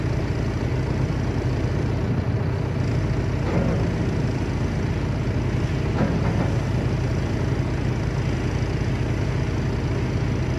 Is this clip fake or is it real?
real